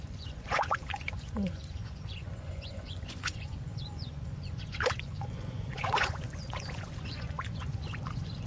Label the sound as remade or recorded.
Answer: remade